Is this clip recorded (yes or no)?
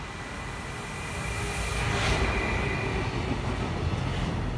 yes